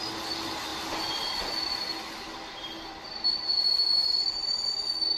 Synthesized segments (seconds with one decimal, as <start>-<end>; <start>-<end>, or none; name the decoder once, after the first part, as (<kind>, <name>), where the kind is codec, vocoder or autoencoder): none